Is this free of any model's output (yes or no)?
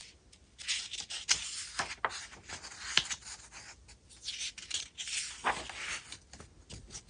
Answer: yes